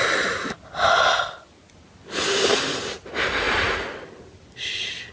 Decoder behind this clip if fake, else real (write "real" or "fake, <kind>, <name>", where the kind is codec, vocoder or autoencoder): real